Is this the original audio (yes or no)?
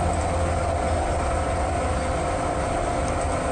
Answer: yes